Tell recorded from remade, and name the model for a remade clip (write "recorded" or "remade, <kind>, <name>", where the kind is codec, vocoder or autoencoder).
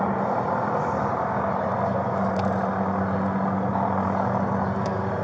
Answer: recorded